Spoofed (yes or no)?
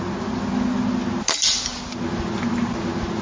no